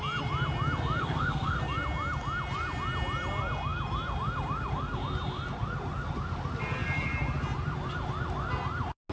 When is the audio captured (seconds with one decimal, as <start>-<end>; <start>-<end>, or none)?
0.0-1.0; 1.6-9.1